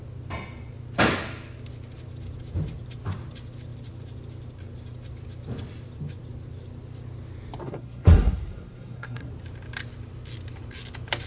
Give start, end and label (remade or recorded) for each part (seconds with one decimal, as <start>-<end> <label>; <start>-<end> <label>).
0.0-7.6 recorded; 7.6-9.3 remade; 9.3-11.3 recorded